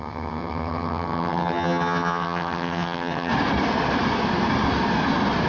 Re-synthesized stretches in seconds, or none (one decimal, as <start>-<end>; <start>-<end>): 0.0-3.3